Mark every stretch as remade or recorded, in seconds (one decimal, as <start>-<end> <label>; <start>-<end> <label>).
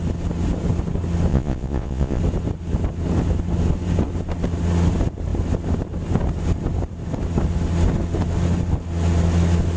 0.0-1.3 recorded; 1.3-2.2 remade; 2.2-9.8 recorded